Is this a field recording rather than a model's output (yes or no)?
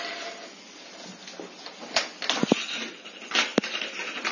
yes